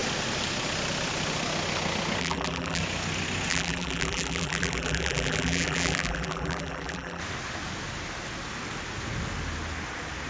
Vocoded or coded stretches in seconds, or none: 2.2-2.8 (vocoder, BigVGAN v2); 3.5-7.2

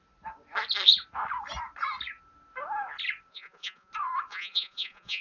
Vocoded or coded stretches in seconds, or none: 3.3-3.9 (vocoder, Vocos); 4.3-5.2

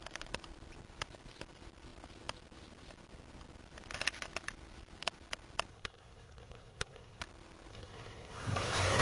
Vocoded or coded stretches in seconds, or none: 5.7-7.2 (codec, SNAC); 7.7-9.0

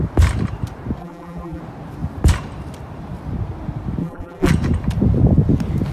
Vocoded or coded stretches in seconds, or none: 1.0-1.6 (vocoder, BigVGAN v2); 4.0-4.5